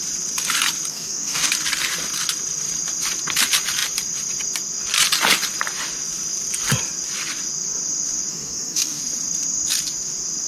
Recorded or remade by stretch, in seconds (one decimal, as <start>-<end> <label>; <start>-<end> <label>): 0.0-0.9 recorded; 0.9-1.5 remade; 1.5-8.3 recorded; 8.3-9.0 remade; 9.0-10.5 recorded